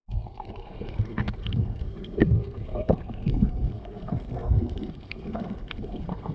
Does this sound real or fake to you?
fake